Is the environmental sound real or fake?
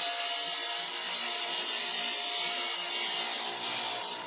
real